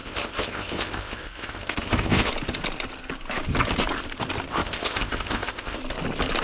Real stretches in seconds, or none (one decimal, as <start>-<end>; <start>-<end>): 2.3-4.5; 5.8-6.4

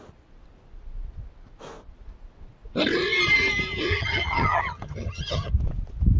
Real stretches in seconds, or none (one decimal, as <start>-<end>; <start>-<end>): 0.0-3.9; 5.5-6.2

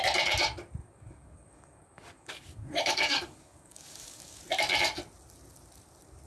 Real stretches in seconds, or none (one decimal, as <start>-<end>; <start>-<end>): 0.0-0.8; 4.4-6.3

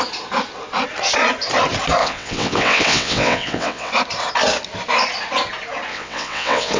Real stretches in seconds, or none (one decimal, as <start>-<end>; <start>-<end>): 0.0-2.0; 3.9-5.9

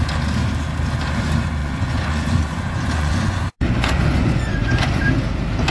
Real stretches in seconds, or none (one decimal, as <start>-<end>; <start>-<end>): 0.0-1.6; 5.0-5.7

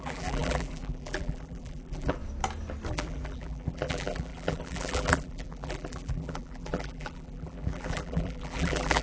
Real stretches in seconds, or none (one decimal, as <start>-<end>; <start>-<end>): 2.2-2.9

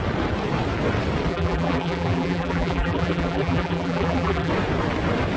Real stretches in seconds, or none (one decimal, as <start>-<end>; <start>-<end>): 0.0-1.3; 4.5-5.4